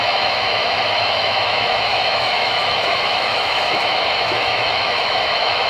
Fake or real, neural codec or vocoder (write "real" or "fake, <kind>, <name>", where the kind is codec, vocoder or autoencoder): fake, autoencoder, DAC-VAE